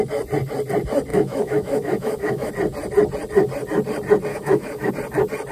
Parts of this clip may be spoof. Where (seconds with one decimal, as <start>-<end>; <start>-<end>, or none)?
1.1-2.5; 4.3-4.9